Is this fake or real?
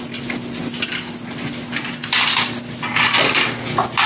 real